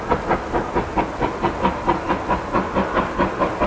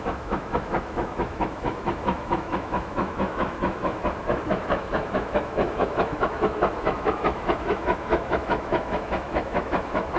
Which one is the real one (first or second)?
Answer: first